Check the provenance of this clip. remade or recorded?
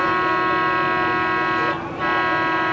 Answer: recorded